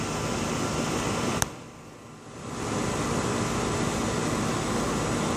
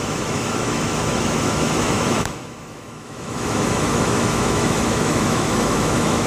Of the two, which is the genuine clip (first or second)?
first